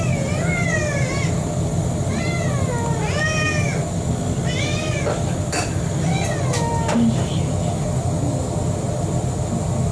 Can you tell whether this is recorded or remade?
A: recorded